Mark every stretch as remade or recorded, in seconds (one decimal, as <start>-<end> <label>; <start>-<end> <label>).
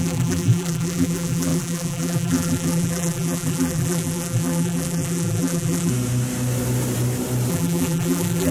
0.0-5.9 remade; 5.9-7.5 recorded; 7.5-8.5 remade